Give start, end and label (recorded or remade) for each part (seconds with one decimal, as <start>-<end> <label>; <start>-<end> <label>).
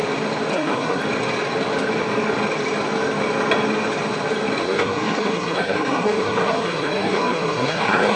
0.0-0.5 recorded; 0.5-1.0 remade; 1.0-4.6 recorded; 4.6-8.2 remade